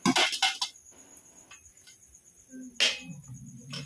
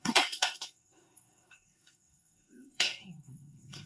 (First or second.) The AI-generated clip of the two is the second